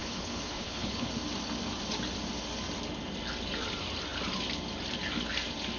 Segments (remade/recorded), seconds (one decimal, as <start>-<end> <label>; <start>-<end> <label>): 0.0-1.1 remade; 1.1-5.8 recorded

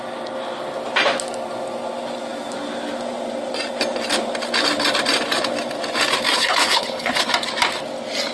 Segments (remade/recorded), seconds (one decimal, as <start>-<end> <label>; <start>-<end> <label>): 0.0-6.3 recorded; 6.3-7.3 remade; 7.3-8.3 recorded

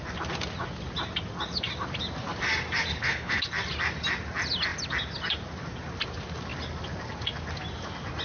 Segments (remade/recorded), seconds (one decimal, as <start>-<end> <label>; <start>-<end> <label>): 0.0-2.9 recorded; 2.9-3.4 remade; 3.4-8.2 recorded

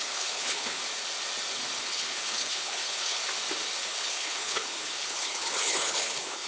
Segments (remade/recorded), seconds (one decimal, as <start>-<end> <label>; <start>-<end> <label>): 0.0-0.8 remade; 0.8-1.8 recorded; 1.8-3.2 remade; 3.2-3.8 recorded; 3.8-6.5 remade

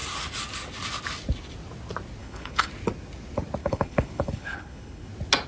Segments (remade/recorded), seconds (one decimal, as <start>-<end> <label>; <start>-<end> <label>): 0.0-2.2 recorded; 2.2-2.7 remade; 2.7-3.6 recorded; 3.6-5.1 remade; 5.1-5.5 recorded